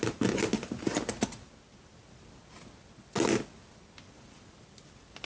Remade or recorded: recorded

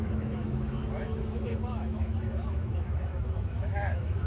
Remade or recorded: remade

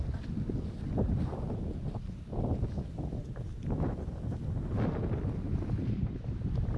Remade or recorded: recorded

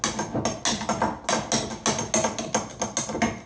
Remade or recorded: recorded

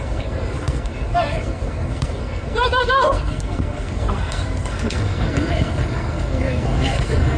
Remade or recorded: remade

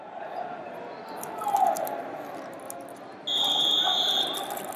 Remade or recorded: recorded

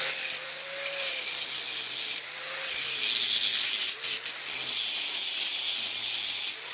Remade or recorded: recorded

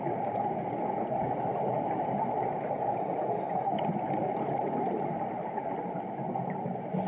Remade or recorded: recorded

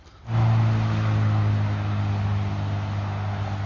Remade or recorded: recorded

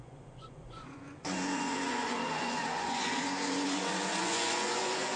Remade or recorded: remade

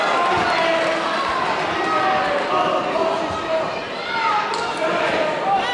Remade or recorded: recorded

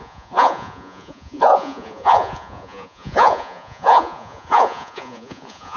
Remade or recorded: remade